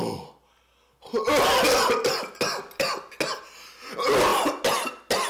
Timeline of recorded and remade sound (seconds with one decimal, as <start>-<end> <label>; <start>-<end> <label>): 0.0-5.3 recorded